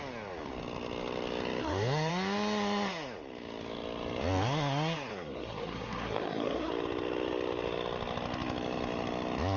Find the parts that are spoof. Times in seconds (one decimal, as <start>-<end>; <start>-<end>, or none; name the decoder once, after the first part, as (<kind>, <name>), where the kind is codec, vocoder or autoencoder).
1.6-2.1 (codec, SNAC); 5.1-6.7